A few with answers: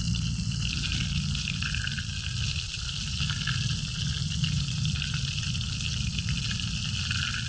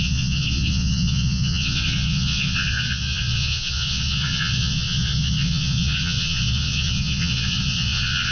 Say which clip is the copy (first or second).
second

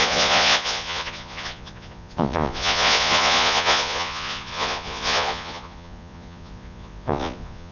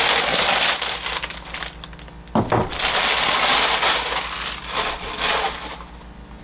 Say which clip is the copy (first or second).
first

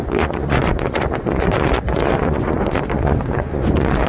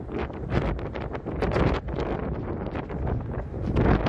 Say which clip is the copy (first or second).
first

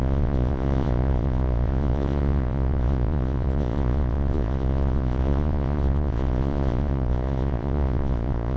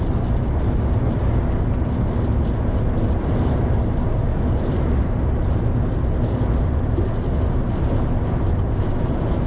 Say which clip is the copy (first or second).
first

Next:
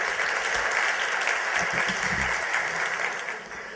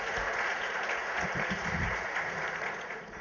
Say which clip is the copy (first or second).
second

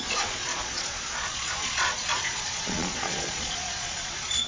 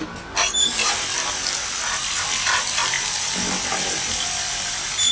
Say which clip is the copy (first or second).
first